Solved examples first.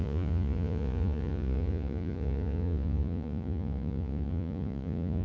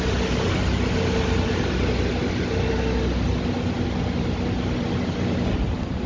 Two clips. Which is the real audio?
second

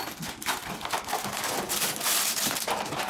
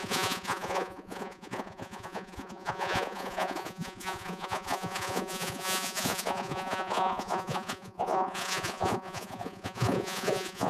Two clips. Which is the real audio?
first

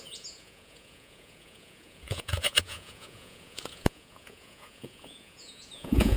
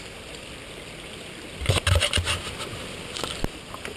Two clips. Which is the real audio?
second